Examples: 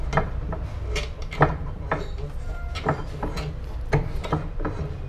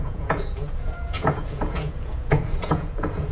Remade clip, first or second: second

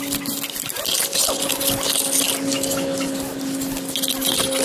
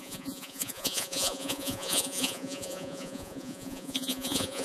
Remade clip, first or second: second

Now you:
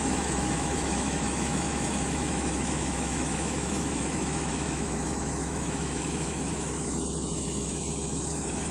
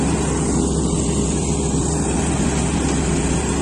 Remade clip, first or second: first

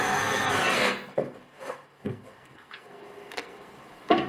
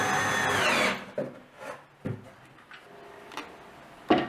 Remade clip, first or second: first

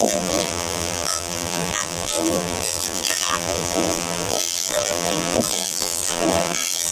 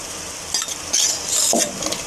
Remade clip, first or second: first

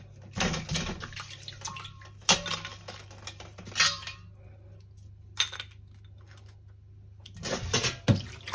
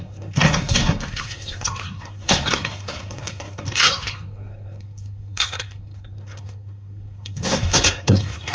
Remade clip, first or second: second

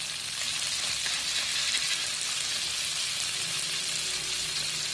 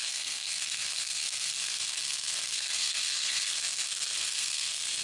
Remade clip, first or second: second